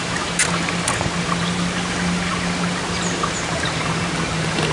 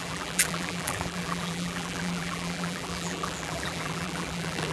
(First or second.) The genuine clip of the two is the first